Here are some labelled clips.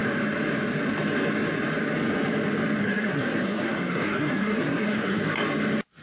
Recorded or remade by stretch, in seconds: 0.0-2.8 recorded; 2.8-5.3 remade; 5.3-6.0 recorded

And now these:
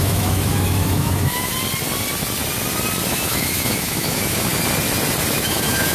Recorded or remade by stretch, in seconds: 0.0-1.5 remade; 1.5-3.1 recorded; 3.1-4.5 remade; 4.5-5.3 recorded; 5.3-5.9 remade

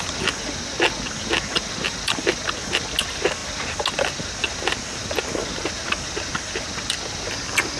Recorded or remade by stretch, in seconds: 0.0-7.8 recorded

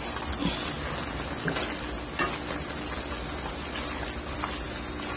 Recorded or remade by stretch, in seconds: 0.0-5.2 recorded

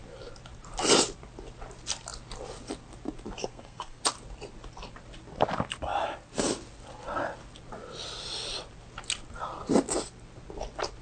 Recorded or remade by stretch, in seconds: 0.0-3.4 recorded; 3.4-4.0 remade; 4.0-11.0 recorded